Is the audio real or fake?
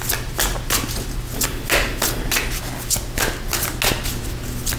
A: real